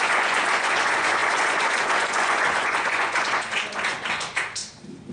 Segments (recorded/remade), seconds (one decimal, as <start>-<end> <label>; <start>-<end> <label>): 0.0-4.6 remade; 4.6-5.1 recorded